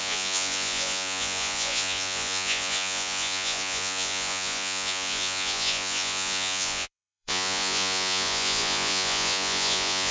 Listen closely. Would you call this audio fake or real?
fake